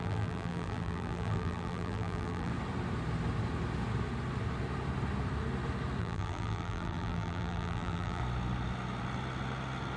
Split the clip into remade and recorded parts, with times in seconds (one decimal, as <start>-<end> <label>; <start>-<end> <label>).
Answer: 0.0-2.5 remade; 2.5-6.0 recorded; 6.0-8.2 remade; 8.2-10.0 recorded